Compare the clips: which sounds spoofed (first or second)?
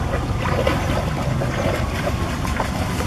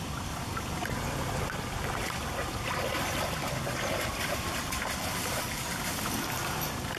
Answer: second